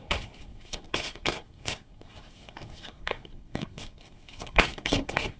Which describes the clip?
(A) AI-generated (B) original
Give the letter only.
A